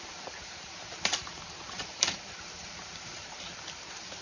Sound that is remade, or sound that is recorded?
remade